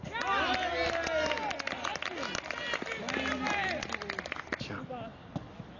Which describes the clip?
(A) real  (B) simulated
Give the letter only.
A